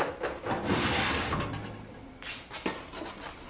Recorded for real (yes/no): yes